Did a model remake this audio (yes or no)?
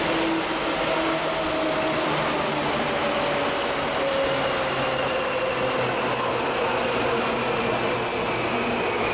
no